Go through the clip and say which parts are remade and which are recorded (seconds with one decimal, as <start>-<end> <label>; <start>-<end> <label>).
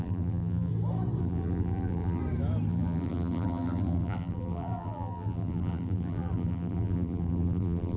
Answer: 0.0-0.7 remade; 0.7-1.2 recorded; 1.2-2.2 remade; 2.2-2.7 recorded; 2.7-8.0 remade